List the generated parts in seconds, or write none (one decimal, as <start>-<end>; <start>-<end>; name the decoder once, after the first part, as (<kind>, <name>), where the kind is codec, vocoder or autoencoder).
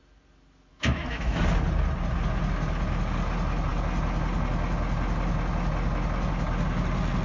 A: 0.7-1.4 (autoencoder, DAC-VAE)